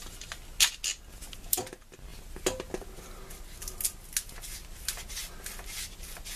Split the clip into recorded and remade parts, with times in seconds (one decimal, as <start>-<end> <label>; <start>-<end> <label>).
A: 0.0-6.4 recorded